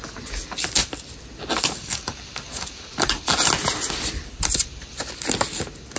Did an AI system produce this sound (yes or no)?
no